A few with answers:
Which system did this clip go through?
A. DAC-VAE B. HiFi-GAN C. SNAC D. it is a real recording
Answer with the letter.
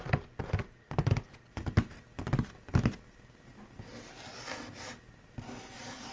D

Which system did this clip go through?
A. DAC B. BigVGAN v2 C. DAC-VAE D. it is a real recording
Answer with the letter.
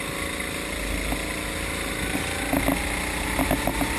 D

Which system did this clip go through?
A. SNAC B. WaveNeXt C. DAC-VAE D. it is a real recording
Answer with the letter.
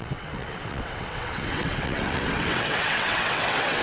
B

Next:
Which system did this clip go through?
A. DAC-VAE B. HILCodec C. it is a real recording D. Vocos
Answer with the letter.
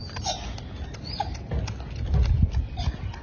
C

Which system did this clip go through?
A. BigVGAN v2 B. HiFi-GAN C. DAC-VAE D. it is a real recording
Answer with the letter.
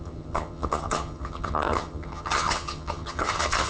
B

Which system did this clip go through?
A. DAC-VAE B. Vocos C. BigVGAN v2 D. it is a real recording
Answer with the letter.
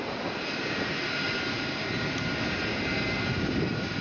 D